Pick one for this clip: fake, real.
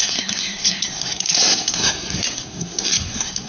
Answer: fake